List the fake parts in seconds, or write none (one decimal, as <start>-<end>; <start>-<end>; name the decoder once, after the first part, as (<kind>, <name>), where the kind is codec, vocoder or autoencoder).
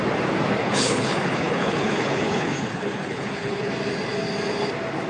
0.6-3.7 (codec, HILCodec)